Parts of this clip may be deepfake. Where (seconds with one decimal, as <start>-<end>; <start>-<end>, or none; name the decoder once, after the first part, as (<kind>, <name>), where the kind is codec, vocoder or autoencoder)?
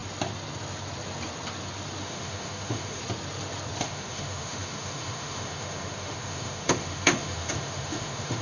2.0-3.0 (autoencoder, DAC-VAE); 3.8-8.4